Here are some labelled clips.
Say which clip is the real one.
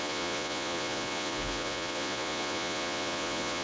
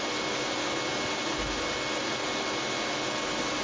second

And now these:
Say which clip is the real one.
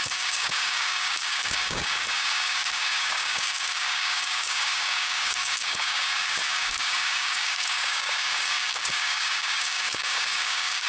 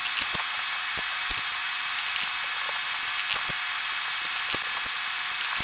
second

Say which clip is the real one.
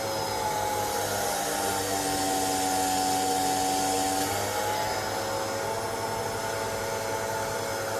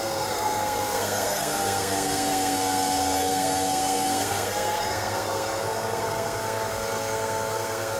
first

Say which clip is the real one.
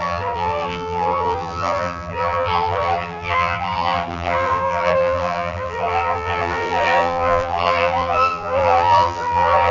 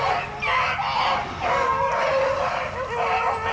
second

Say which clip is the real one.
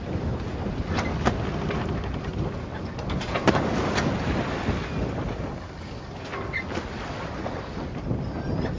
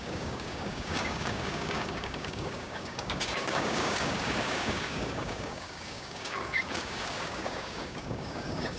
first